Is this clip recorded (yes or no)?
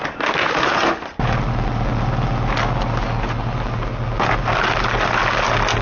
yes